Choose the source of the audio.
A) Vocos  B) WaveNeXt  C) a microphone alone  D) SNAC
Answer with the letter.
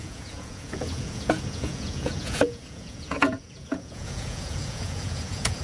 A